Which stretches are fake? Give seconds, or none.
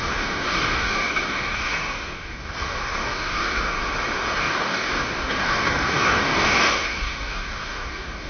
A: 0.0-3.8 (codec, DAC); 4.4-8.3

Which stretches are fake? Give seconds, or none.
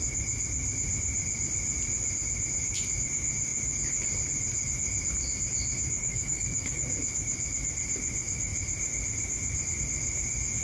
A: 6.0-6.8 (codec, DAC)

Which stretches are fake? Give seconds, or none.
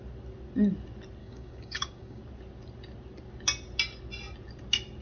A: 1.2-2.2 (codec, DAC)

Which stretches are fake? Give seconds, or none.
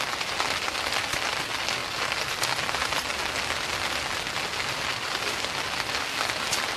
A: none